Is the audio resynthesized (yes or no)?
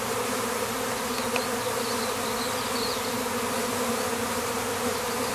no